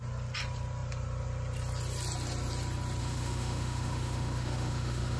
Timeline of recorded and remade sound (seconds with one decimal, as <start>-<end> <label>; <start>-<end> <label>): 0.0-3.0 recorded; 3.0-5.2 remade